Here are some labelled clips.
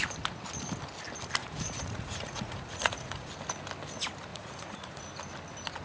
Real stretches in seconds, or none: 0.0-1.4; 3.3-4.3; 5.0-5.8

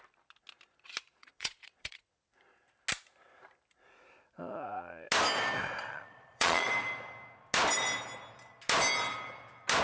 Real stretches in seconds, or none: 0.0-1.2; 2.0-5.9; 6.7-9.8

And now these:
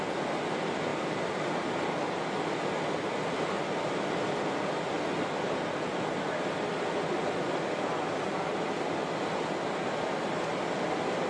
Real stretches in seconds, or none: 0.0-11.3

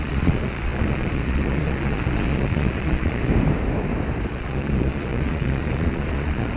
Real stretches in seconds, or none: 3.3-4.3

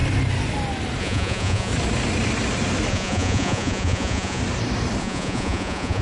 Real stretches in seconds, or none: 0.0-1.0; 1.7-2.9; 4.4-5.0